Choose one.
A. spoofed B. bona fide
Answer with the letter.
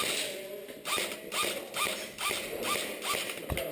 B